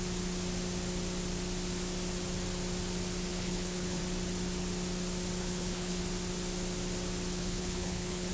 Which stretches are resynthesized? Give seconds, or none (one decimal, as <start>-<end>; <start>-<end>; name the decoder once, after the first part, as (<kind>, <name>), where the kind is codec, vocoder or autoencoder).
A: 3.3-4.0 (codec, HILCodec); 5.4-6.0; 7.4-8.3